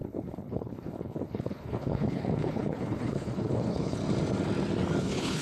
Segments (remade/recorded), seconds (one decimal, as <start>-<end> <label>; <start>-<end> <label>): 0.0-4.0 remade; 4.0-5.0 recorded; 5.0-5.4 remade